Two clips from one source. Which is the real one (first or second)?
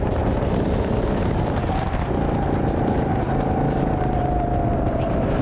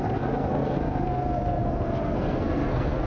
first